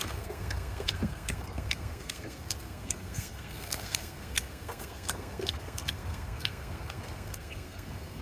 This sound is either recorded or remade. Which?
remade